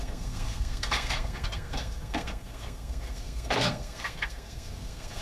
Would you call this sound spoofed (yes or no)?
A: yes